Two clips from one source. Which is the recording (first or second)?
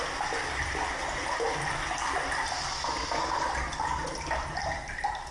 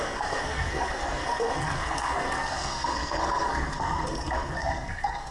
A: first